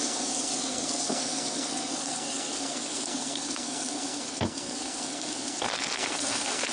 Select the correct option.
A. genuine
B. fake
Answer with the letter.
B